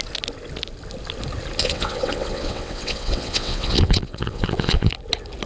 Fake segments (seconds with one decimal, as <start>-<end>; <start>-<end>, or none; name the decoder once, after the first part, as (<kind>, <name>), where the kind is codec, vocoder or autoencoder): 1.6-4.9 (vocoder, WaveNeXt)